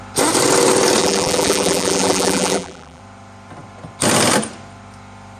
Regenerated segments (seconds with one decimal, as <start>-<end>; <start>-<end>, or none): 1.0-3.0